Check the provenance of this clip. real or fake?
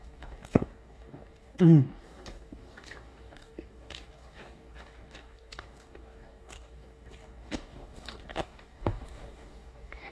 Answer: fake